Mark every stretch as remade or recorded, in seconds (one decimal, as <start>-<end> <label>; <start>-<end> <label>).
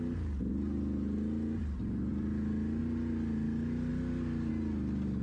0.0-2.1 recorded; 2.1-2.8 remade; 2.8-3.9 recorded; 3.9-4.5 remade; 4.5-5.2 recorded